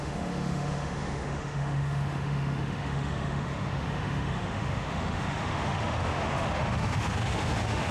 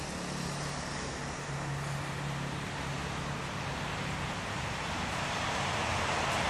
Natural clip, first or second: second